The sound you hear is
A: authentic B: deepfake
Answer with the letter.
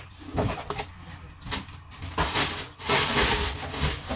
A